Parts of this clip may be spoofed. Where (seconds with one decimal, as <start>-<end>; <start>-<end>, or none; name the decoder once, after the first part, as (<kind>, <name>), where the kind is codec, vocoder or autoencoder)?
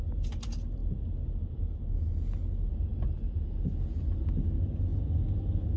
none